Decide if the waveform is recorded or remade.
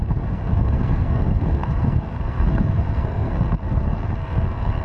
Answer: remade